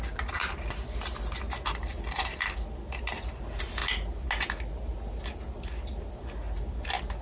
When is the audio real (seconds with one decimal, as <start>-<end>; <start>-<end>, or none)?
0.0-7.2